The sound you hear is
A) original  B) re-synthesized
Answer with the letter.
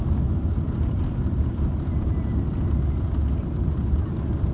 A